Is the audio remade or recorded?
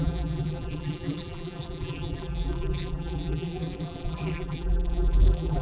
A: remade